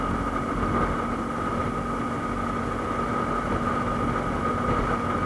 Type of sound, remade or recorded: recorded